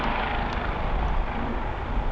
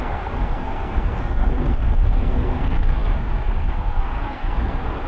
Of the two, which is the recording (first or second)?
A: first